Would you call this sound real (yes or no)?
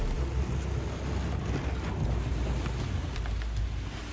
yes